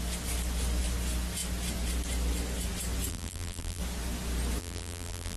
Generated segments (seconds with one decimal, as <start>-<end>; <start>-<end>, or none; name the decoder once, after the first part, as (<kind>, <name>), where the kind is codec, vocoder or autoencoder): 3.1-3.8 (vocoder, BigVGAN v2); 4.6-5.4